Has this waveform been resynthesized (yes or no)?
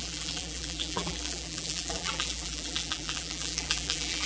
yes